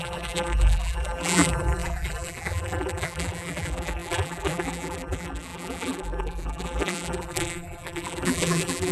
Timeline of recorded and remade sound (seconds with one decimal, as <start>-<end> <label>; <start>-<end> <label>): 0.0-8.9 remade